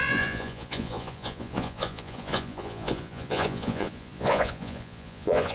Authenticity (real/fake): fake